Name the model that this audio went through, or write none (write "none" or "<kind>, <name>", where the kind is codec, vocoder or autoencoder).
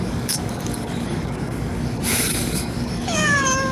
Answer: codec, DAC